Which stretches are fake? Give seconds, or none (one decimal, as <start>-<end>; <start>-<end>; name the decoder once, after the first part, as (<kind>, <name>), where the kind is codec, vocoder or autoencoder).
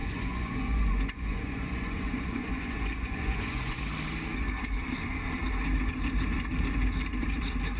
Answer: 0.0-3.8 (vocoder, Vocos)